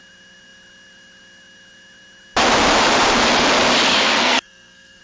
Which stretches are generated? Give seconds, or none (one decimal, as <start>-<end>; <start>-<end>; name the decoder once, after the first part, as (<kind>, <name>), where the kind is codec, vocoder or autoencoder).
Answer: 3.9-5.0 (codec, SNAC)